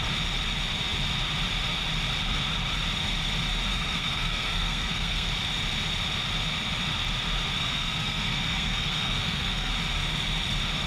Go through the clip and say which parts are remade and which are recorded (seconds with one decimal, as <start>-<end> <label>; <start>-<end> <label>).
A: 0.0-3.7 recorded; 3.7-5.3 remade; 5.3-7.5 recorded; 7.5-9.7 remade; 9.7-10.9 recorded